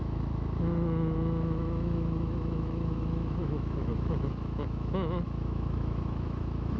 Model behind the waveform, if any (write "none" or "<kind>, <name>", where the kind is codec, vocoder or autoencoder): autoencoder, DAC-VAE